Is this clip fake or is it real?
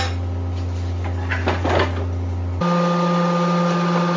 real